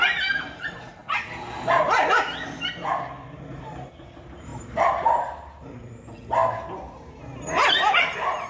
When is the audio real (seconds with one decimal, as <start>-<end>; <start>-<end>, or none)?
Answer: 1.0-2.7; 6.4-7.8